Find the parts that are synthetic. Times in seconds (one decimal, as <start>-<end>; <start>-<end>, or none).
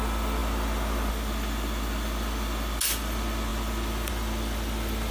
none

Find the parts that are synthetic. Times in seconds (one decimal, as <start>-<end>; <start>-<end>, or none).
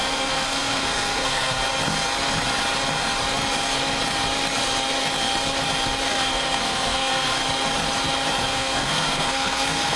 0.0-1.6; 6.1-7.4; 8.4-10.0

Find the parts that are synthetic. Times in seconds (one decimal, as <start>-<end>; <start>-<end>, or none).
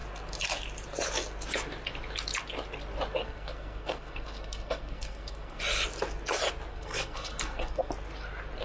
3.2-5.6; 6.7-7.9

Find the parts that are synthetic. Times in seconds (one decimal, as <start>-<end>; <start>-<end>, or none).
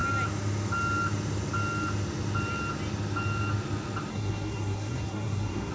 4.1-5.7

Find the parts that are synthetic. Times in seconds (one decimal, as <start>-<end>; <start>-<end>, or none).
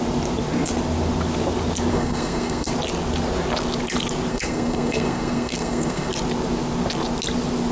1.9-2.7; 4.3-6.1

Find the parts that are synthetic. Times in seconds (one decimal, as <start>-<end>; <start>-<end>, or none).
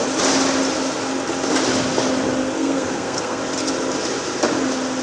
2.4-3.4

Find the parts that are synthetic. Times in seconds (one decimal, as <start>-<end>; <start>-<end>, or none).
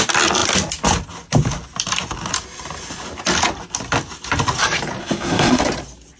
5.0-5.6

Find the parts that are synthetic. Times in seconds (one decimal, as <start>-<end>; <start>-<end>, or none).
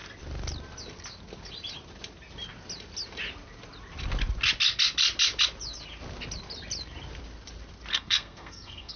7.9-9.0